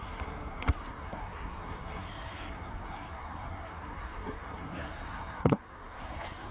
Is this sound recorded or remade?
remade